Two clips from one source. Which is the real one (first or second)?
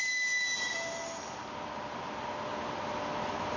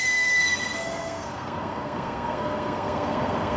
first